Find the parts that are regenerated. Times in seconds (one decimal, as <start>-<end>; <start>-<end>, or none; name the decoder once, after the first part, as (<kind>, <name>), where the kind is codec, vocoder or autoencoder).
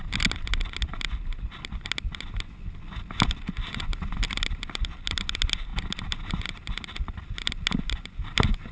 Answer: none